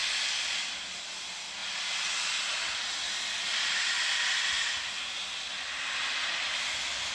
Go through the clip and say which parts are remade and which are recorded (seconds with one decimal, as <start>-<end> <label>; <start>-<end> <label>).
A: 0.0-7.1 recorded